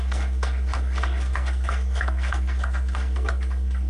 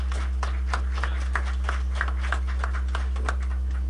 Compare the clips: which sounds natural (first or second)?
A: second